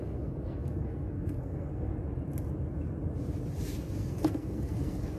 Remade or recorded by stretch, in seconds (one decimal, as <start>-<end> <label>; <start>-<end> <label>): 0.0-1.9 remade; 1.9-3.6 recorded; 3.6-5.2 remade